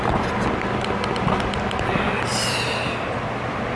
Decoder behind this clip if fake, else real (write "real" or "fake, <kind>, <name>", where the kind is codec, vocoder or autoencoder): real